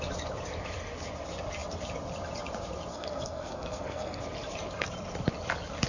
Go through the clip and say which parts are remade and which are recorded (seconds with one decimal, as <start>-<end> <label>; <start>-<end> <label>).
0.0-2.9 recorded; 2.9-4.2 remade; 4.2-5.9 recorded